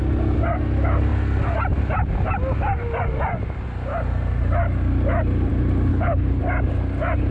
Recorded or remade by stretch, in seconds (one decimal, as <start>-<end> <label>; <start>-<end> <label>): 0.0-5.9 recorded; 5.9-6.4 remade; 6.4-7.3 recorded

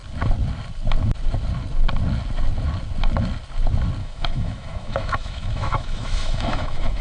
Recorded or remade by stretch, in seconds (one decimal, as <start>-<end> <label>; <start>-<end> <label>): 0.0-4.0 recorded; 4.0-7.0 remade

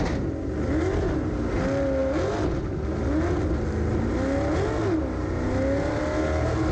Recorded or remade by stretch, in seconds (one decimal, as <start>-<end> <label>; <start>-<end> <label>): 0.0-6.7 recorded

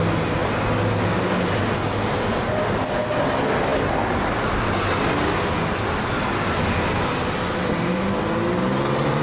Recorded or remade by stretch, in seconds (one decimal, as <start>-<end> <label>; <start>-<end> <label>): 0.0-9.2 recorded

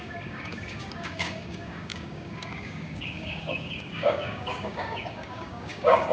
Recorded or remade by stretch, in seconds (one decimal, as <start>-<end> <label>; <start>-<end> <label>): 0.0-6.1 remade